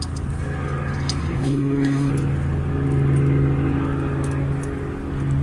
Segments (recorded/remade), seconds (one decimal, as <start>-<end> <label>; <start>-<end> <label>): 0.0-1.2 recorded; 1.2-2.1 remade; 2.1-5.4 recorded